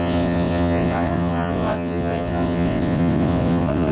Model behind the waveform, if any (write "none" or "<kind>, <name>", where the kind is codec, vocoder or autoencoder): vocoder, WaveNeXt